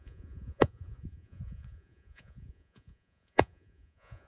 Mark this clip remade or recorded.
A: remade